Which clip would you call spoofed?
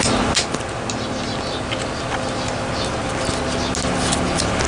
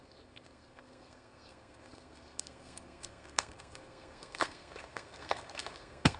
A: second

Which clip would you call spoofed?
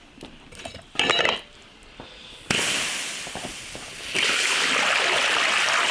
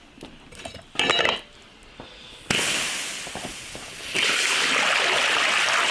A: first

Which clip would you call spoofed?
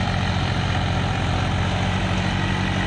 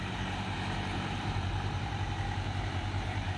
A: second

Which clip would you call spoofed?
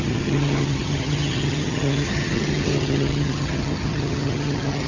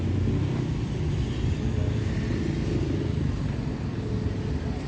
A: first